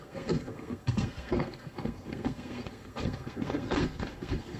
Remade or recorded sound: remade